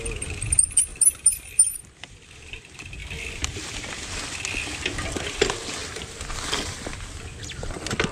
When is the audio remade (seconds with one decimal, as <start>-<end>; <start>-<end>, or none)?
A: 0.9-1.6; 3.0-3.8; 5.8-6.9